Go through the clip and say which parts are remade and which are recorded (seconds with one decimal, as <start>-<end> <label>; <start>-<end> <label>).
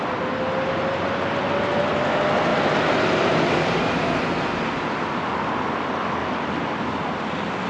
0.0-6.2 recorded; 6.2-7.0 remade; 7.0-7.7 recorded